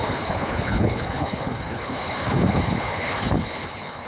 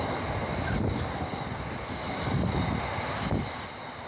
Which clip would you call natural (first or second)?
second